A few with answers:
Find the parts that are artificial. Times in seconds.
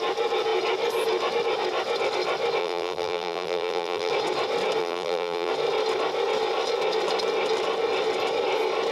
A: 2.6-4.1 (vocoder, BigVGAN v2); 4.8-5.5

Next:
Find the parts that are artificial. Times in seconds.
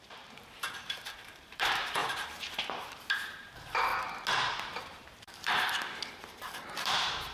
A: 0.0-3.9 (vocoder, BigVGAN v2); 4.8-7.3